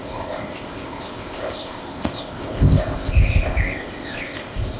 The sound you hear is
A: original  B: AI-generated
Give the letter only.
B